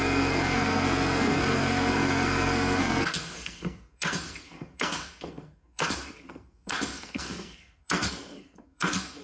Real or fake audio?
fake